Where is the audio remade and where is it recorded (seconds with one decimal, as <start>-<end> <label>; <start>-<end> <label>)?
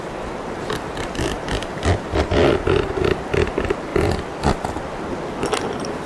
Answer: 0.0-6.1 recorded